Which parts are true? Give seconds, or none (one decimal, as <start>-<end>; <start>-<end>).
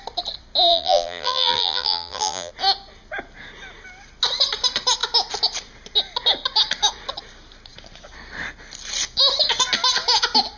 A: 0.0-0.7; 2.5-10.6